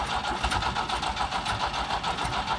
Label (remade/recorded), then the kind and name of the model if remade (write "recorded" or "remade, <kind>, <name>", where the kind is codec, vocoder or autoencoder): recorded